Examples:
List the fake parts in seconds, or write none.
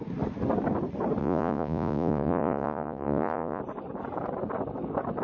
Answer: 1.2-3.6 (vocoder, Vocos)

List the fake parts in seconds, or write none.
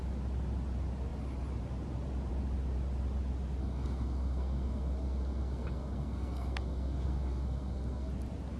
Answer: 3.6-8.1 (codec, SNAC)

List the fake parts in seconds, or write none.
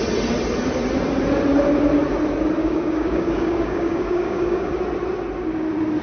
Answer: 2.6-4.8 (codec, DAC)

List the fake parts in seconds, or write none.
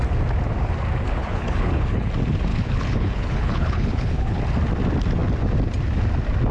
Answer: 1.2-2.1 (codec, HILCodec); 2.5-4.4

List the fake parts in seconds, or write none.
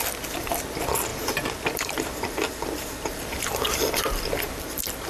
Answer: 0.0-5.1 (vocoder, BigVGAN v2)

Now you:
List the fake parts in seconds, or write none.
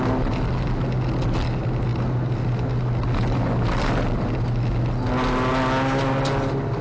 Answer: none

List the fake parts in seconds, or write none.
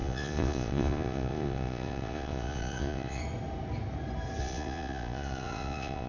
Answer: 0.0-3.2 (vocoder, Vocos); 4.4-6.1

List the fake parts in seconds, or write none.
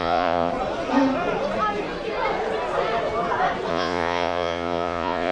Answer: 0.0-0.5 (vocoder, Vocos); 3.7-5.3